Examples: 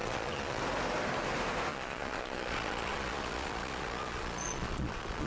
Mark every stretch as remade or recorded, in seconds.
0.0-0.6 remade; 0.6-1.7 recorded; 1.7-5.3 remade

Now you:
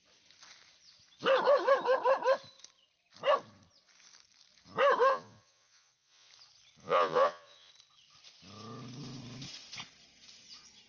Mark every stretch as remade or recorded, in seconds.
0.0-5.1 recorded; 5.1-6.3 remade; 6.3-6.8 recorded; 6.8-7.7 remade; 7.7-10.9 recorded

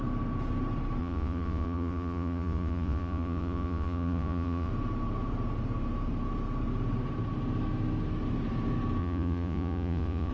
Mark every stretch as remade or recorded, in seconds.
0.0-1.0 recorded; 1.0-4.7 remade; 4.7-9.0 recorded; 9.0-10.3 remade

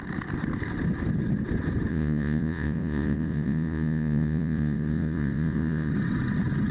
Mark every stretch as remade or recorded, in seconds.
0.0-1.9 recorded; 1.9-5.9 remade; 5.9-6.7 recorded

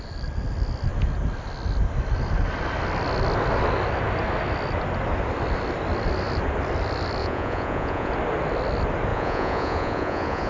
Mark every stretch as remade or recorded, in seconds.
0.0-7.2 recorded; 7.2-8.1 remade; 8.1-9.1 recorded; 9.1-10.5 remade

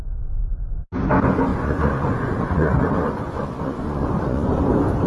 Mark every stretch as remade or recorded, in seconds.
0.0-1.5 recorded; 1.5-4.6 remade; 4.6-5.1 recorded

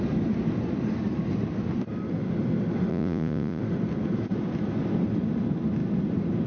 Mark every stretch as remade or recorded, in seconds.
0.0-2.9 recorded; 2.9-3.6 remade; 3.6-6.5 recorded